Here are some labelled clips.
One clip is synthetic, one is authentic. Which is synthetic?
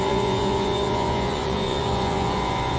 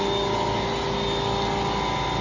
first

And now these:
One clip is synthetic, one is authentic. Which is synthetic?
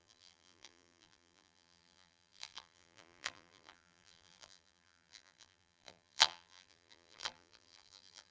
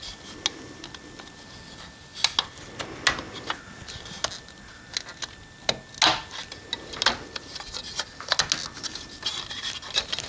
first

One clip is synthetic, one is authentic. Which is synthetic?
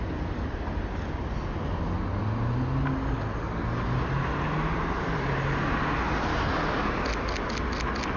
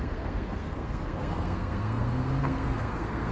second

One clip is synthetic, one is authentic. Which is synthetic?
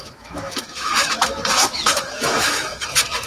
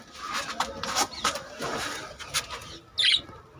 first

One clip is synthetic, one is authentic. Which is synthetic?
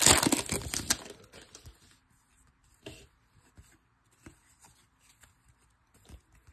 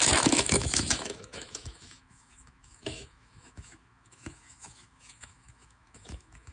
second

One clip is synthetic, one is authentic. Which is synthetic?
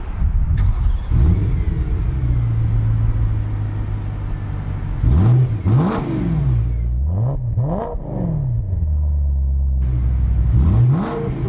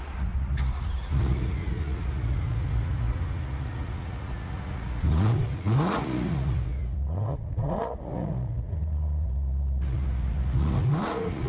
second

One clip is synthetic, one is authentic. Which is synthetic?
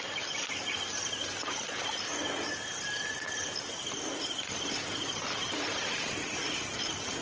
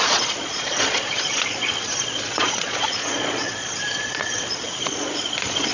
second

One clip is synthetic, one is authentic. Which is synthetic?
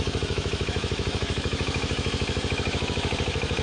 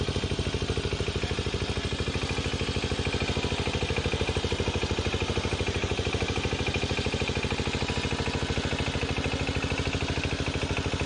first